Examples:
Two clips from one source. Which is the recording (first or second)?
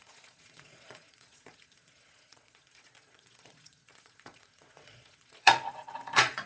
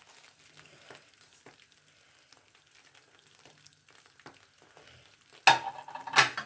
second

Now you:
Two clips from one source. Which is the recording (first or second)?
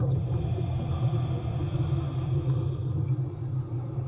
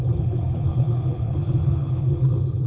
first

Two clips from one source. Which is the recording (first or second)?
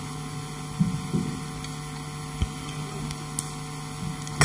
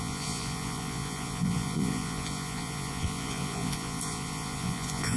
first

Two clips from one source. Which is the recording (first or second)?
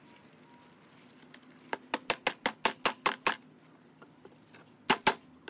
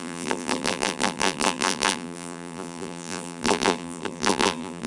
first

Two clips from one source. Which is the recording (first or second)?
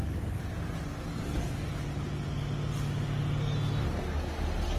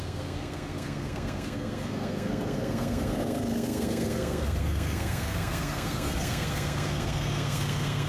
first